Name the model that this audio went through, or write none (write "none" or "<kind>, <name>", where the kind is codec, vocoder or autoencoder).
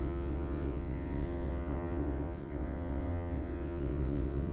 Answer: vocoder, WaveNeXt